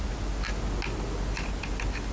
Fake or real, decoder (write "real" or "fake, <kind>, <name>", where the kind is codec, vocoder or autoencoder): real